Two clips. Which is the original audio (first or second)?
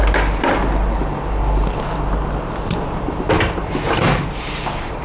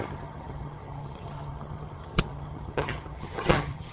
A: first